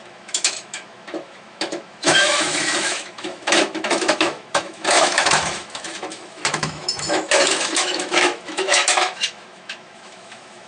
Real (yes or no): no